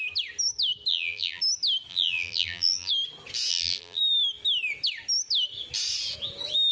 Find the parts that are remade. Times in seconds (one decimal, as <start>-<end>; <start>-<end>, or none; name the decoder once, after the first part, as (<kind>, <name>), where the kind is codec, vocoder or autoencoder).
0.9-1.4 (vocoder, BigVGAN v2); 1.9-2.9; 3.5-4.0